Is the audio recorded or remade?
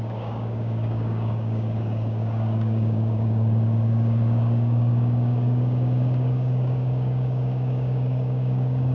remade